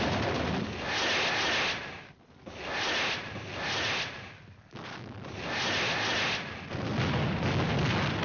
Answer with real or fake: real